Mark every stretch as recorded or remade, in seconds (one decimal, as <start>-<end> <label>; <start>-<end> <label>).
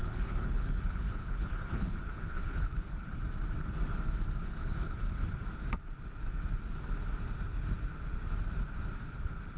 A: 0.0-3.2 remade; 3.2-4.4 recorded; 4.4-5.2 remade; 5.2-9.6 recorded